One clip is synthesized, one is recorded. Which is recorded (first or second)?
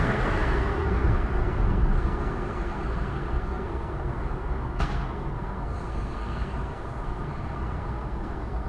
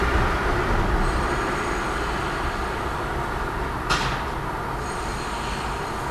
second